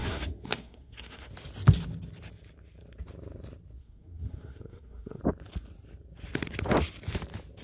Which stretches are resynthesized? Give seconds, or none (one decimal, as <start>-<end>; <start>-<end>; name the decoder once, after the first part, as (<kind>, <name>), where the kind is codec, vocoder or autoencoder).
0.0-1.3 (codec, SNAC); 3.8-5.2